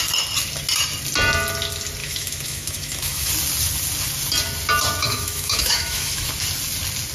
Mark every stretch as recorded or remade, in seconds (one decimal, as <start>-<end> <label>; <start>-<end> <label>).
0.0-2.0 recorded; 2.0-3.3 remade; 3.3-5.0 recorded; 5.0-6.3 remade; 6.3-7.1 recorded